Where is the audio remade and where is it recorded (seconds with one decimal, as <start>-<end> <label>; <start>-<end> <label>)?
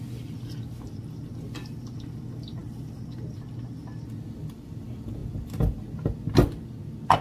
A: 0.0-7.2 recorded